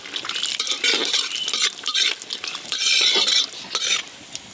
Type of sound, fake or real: real